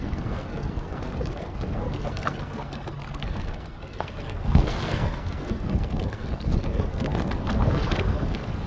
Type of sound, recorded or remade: remade